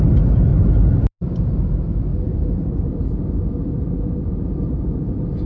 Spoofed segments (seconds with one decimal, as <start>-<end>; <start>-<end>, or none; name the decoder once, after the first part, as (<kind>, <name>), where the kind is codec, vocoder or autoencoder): 2.1-5.5 (vocoder, BigVGAN v2)